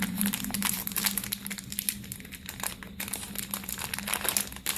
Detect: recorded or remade recorded